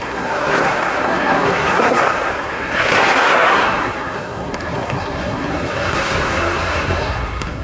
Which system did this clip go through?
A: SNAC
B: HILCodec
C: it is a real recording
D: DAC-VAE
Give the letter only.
A